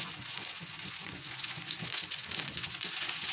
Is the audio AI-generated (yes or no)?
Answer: yes